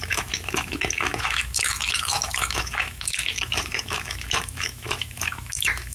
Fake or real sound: fake